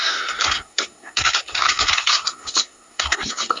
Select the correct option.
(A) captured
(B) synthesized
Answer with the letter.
B